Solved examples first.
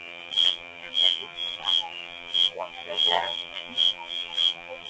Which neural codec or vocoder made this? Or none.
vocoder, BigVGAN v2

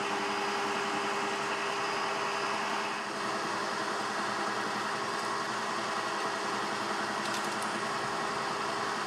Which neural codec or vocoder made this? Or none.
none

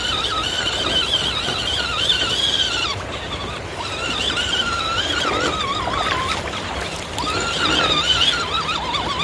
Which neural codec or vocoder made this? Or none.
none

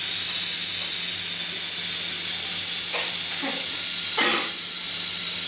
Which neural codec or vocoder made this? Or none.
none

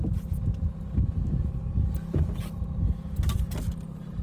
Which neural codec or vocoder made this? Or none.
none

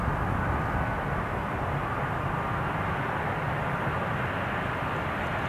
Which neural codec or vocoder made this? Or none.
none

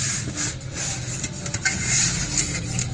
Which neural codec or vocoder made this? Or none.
none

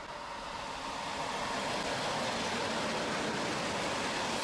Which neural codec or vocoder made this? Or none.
none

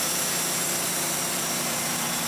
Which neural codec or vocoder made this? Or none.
vocoder, BigVGAN v2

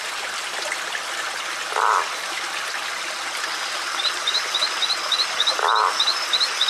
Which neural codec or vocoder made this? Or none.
none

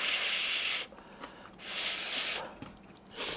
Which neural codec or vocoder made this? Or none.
none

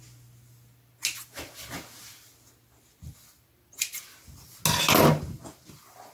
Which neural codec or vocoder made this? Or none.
none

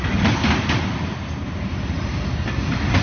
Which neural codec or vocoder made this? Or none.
none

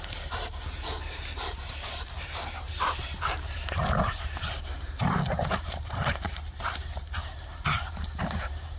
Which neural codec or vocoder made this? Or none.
vocoder, BigVGAN v2